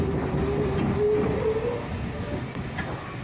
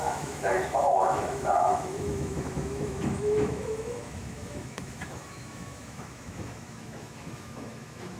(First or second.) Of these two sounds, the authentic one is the first